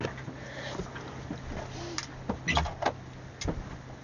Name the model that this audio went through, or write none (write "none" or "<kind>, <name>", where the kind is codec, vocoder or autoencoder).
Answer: none